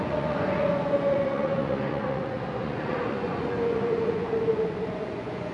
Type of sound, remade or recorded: remade